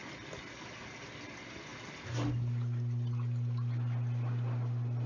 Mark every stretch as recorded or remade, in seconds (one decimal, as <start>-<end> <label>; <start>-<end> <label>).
0.0-5.1 recorded